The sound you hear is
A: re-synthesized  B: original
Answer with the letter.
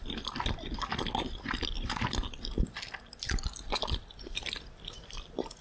A